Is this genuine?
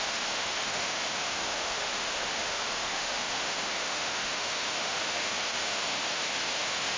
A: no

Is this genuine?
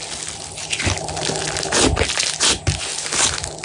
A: yes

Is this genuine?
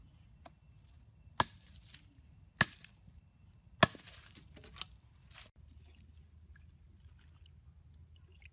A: yes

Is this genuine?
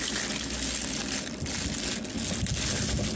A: yes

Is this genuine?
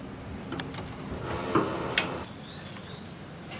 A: yes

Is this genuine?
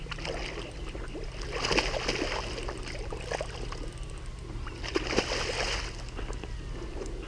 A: yes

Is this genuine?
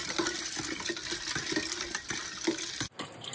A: yes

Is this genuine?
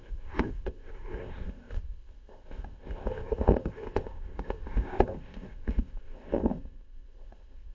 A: no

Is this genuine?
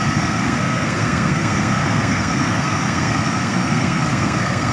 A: no